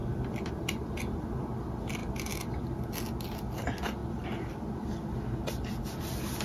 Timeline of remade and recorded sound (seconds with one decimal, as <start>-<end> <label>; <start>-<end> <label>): 0.0-6.4 recorded